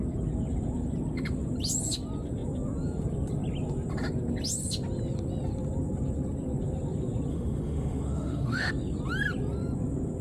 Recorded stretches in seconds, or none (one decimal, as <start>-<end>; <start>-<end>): 0.0-7.3; 8.7-10.2